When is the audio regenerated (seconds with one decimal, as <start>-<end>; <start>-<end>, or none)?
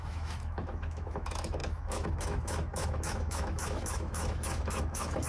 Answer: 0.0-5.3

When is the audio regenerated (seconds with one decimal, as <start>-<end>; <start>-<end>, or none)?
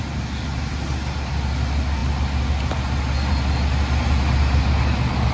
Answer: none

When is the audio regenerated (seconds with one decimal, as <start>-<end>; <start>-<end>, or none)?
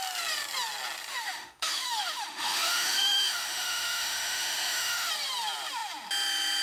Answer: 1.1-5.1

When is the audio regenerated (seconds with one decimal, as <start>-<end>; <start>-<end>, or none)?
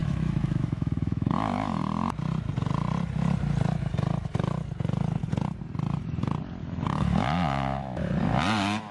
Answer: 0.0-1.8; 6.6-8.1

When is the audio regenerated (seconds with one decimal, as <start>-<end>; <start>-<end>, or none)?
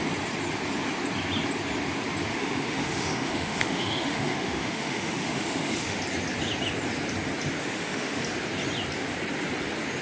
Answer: 2.3-6.0; 7.6-8.2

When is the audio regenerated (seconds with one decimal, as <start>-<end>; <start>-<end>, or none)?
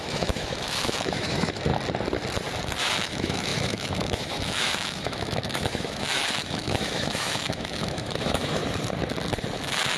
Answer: 0.0-1.7; 2.8-8.6; 9.6-10.0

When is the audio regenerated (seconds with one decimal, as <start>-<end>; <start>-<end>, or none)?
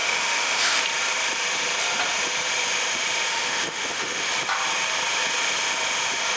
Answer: 0.0-0.8; 3.3-4.3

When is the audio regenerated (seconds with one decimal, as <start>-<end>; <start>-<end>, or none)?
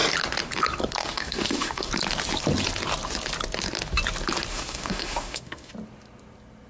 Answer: 1.0-1.9; 4.5-5.7